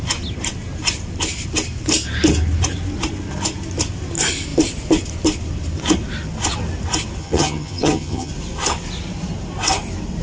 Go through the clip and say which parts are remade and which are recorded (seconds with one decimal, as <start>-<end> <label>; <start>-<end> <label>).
0.0-7.2 recorded; 7.2-8.3 remade; 8.3-10.2 recorded

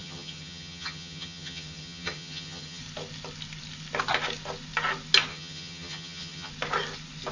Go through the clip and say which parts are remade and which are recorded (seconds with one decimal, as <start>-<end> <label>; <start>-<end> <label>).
0.0-2.8 remade; 2.8-5.3 recorded; 5.3-6.5 remade; 6.5-7.3 recorded